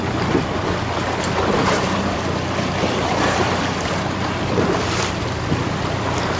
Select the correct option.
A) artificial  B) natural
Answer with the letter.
B